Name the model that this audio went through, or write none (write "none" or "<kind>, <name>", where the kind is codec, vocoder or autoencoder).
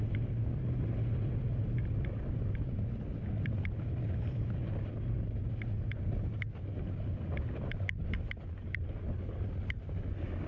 none